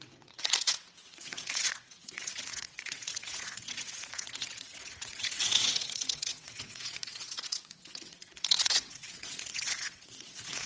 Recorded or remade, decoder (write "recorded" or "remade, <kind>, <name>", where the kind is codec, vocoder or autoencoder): remade, vocoder, WaveNeXt